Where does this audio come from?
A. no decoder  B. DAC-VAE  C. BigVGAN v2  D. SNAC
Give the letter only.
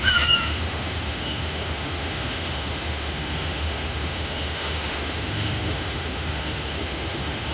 B